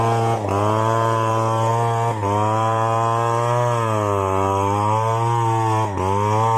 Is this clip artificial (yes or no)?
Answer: no